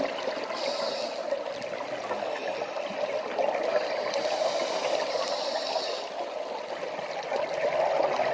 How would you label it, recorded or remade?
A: recorded